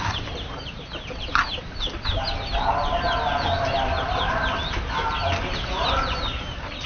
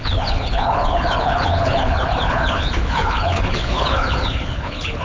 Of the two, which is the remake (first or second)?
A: second